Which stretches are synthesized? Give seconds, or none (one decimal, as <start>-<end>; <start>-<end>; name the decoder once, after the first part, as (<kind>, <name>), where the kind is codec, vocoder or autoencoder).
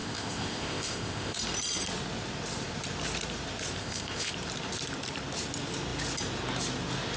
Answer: 0.0-1.4 (codec, ZipCodec); 3.8-4.3